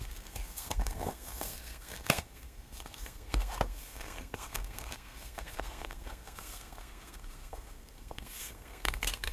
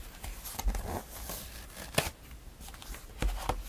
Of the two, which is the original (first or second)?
second